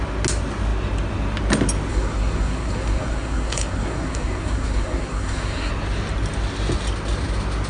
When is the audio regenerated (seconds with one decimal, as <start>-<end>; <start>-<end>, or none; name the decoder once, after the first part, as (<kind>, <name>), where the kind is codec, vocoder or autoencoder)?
1.9-5.7 (codec, SNAC)